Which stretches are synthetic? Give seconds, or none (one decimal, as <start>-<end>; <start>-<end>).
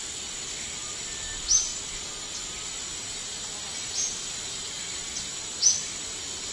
none